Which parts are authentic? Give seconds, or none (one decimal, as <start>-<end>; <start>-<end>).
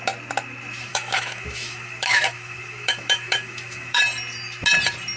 0.0-0.9; 4.0-5.2